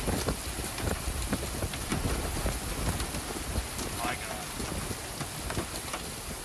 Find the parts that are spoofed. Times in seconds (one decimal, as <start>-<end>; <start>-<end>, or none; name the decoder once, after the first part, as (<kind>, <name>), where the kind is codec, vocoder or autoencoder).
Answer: none